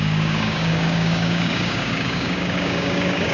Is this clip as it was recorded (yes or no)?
no